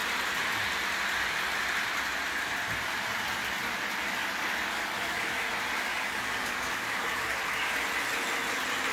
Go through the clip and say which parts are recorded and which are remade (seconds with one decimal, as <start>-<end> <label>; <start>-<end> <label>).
0.0-4.2 recorded; 4.2-5.5 remade; 5.5-5.9 recorded; 5.9-7.7 remade; 7.7-8.9 recorded